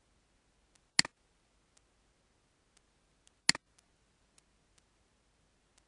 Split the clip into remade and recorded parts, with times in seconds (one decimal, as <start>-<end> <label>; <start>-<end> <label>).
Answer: 0.0-5.9 recorded